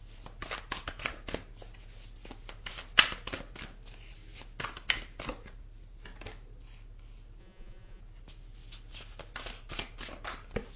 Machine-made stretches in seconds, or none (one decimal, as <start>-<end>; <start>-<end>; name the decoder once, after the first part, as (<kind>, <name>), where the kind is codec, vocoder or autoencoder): 7.4-8.0 (vocoder, Vocos)